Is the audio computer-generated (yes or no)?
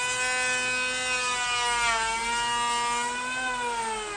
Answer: no